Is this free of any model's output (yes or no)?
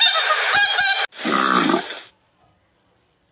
yes